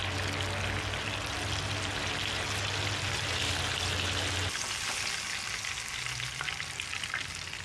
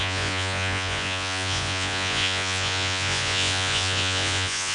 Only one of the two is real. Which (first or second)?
first